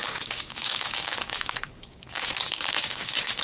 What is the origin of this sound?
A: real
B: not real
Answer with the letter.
B